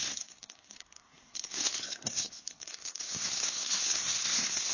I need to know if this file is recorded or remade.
remade